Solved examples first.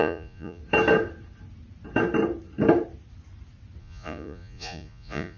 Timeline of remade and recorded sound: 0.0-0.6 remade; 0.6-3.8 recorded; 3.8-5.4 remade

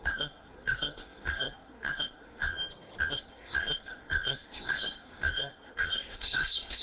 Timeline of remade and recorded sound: 0.0-2.5 remade; 2.5-3.1 recorded; 3.1-6.8 remade

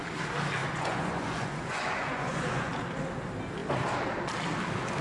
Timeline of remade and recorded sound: 0.0-0.6 recorded; 0.6-2.7 remade; 2.7-5.0 recorded